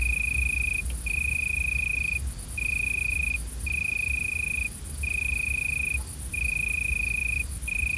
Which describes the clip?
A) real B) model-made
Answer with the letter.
A